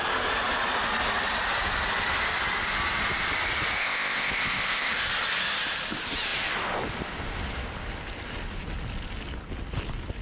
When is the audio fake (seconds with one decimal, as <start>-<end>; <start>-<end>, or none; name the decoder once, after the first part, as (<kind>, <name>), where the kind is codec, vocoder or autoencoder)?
3.8-4.9 (codec, ZipCodec)